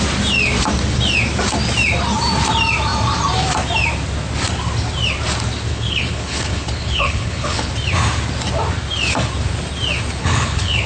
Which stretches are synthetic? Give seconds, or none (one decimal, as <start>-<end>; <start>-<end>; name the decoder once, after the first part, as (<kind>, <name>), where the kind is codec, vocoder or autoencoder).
5.7-7.7 (codec, HILCodec); 10.2-10.9